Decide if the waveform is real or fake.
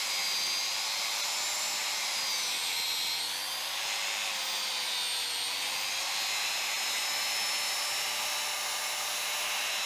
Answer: real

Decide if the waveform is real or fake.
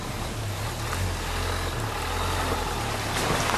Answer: real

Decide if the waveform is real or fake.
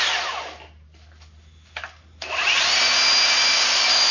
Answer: real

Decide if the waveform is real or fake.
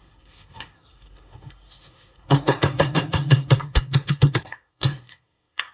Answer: fake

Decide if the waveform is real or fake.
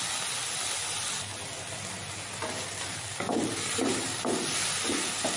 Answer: real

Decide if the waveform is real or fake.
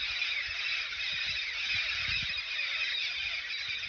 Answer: real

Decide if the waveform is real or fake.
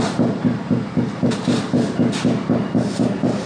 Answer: real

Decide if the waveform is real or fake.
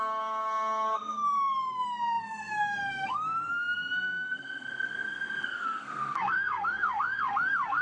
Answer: fake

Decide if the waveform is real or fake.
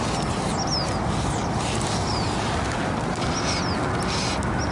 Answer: real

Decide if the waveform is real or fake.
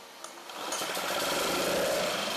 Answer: real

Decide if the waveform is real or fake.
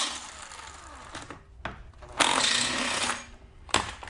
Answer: real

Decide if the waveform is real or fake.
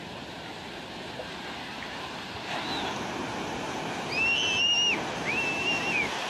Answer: real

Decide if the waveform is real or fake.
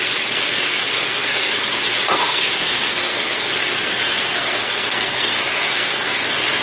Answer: fake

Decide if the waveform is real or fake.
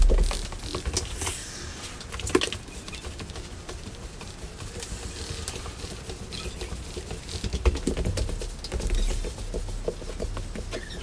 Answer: real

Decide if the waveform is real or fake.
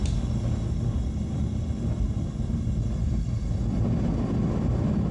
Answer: real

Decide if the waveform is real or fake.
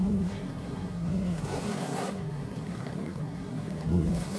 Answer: fake